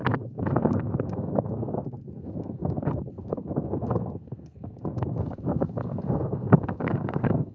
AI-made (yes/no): yes